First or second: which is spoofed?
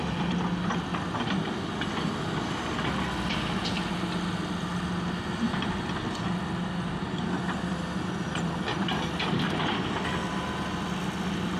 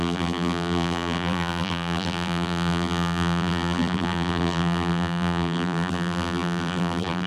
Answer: second